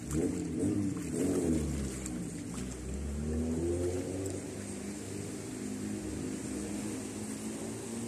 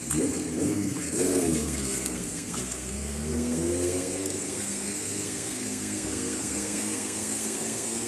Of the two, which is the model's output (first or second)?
second